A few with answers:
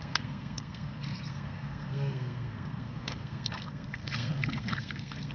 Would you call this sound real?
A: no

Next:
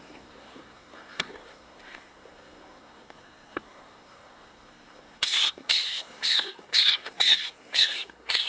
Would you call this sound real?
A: no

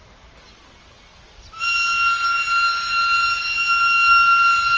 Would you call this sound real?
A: yes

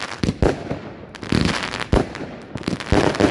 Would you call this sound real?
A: yes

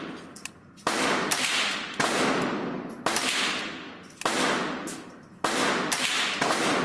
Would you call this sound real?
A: yes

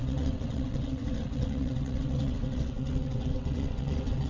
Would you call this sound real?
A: no